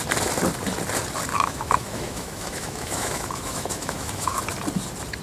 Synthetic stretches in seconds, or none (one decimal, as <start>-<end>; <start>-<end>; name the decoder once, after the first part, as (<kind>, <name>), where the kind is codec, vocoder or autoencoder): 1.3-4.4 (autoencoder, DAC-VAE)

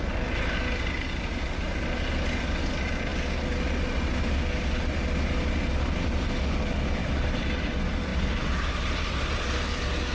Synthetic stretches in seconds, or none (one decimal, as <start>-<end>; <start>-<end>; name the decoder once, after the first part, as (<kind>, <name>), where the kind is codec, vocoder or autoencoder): none

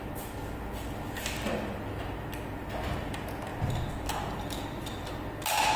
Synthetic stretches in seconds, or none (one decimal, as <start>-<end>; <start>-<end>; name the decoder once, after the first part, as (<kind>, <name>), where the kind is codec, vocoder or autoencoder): none